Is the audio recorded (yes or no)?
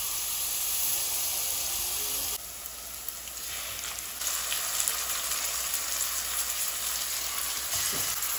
yes